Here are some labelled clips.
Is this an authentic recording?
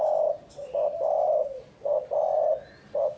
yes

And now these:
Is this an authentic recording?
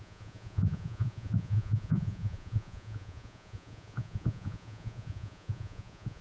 no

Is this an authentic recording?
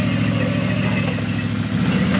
yes